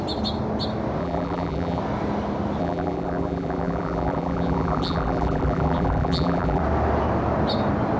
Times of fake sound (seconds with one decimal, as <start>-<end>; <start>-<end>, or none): 1.0-1.8; 2.6-6.6